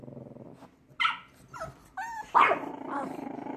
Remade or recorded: recorded